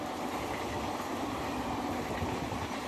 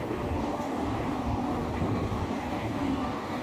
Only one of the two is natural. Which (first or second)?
first